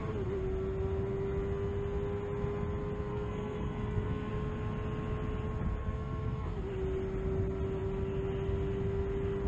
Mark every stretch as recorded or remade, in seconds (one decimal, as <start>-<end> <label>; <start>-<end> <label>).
0.0-3.1 recorded; 3.1-4.3 remade; 4.3-5.8 recorded; 5.8-6.6 remade; 6.6-9.5 recorded